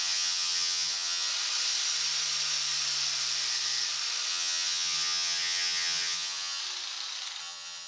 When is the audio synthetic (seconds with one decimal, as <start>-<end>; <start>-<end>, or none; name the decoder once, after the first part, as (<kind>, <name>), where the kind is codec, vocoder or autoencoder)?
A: 0.0-1.3 (vocoder, HiFi-GAN); 4.3-6.6; 7.4-7.9